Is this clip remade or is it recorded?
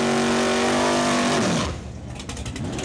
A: recorded